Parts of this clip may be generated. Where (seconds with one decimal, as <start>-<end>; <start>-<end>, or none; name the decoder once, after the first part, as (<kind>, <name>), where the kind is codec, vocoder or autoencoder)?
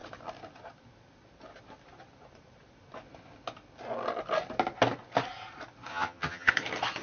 5.9-6.5 (vocoder, HiFi-GAN)